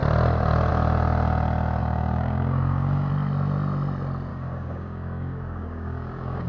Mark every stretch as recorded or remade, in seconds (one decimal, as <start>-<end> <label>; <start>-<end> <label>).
0.0-1.8 recorded; 1.8-3.1 remade; 3.1-4.3 recorded; 4.3-6.5 remade